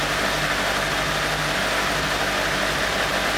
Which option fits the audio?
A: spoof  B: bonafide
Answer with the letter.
B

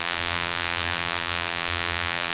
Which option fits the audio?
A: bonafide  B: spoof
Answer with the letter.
B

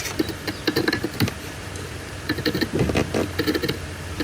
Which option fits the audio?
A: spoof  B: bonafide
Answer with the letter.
A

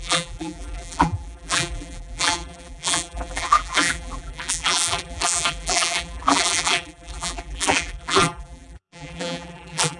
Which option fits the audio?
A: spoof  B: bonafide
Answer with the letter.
A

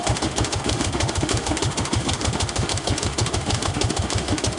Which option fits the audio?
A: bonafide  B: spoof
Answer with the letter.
B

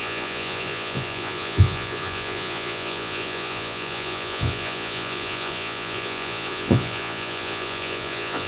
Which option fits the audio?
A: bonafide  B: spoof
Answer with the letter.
B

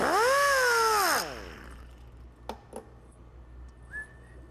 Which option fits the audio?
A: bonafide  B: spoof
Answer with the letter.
A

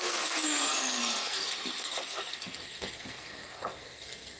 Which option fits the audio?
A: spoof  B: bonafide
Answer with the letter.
A